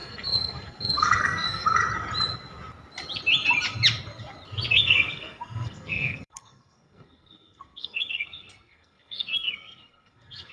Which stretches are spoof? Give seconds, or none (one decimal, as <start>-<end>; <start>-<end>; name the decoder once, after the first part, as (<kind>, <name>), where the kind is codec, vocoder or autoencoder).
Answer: 0.0-1.8 (codec, SNAC); 4.7-10.5